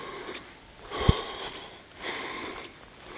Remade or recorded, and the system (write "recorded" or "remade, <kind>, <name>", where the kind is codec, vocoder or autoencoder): recorded